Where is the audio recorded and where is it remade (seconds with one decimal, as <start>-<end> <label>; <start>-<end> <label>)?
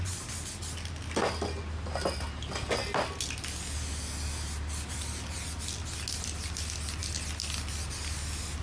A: 0.0-8.6 recorded